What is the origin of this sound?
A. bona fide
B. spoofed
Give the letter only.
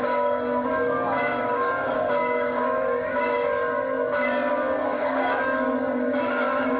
B